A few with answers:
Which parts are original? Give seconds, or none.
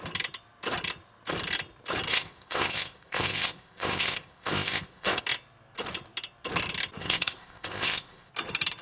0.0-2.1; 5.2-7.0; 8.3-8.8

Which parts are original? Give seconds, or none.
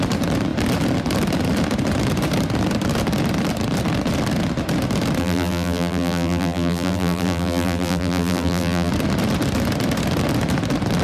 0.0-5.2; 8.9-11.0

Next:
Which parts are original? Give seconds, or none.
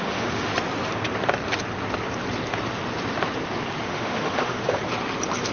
0.5-3.8; 4.8-5.5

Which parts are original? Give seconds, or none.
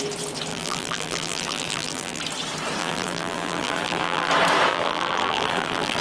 0.0-0.5; 2.2-2.8; 4.3-4.7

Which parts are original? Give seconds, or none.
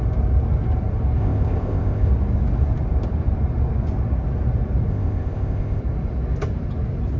0.0-1.2; 2.1-4.9; 5.8-7.2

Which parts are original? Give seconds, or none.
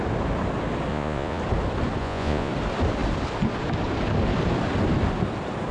0.0-0.9; 1.4-2.0; 2.5-5.7